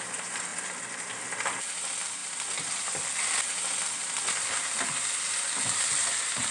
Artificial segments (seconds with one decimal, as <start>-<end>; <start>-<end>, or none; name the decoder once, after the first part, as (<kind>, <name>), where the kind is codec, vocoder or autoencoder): none